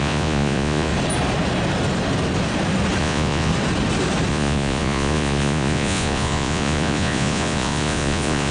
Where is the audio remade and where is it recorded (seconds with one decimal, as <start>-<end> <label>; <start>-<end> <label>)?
0.0-0.9 remade; 0.9-3.0 recorded; 3.0-3.5 remade; 3.5-4.3 recorded; 4.3-8.5 remade